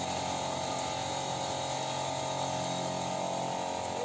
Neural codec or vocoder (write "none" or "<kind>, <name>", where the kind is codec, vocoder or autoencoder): none